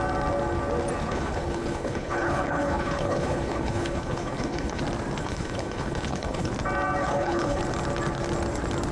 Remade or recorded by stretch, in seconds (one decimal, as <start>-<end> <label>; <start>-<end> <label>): 0.0-1.0 recorded; 1.0-4.8 remade; 4.8-5.2 recorded; 5.2-6.5 remade; 6.5-7.0 recorded; 7.0-7.6 remade; 7.6-8.9 recorded